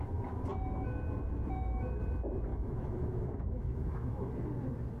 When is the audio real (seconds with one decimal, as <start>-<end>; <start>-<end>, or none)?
0.0-2.5; 4.3-5.0